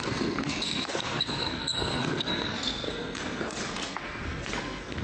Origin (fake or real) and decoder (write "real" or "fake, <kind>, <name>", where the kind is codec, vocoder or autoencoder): fake, codec, SNAC